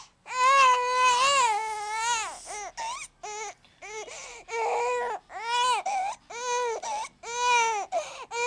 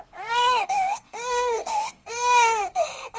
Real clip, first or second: first